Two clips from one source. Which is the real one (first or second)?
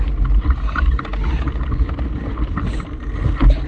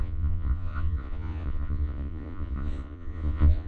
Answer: first